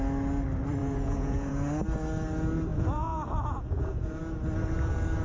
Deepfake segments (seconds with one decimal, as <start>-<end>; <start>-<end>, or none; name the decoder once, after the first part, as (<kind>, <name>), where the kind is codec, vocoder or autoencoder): 0.8-1.5 (vocoder, Vocos); 2.7-4.2